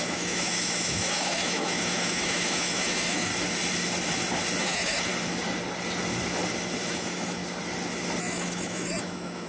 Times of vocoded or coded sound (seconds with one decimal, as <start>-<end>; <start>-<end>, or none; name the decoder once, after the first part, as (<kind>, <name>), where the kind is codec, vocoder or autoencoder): 0.0-3.3 (autoencoder, DAC-VAE); 4.6-5.1; 6.9-7.4; 8.2-9.5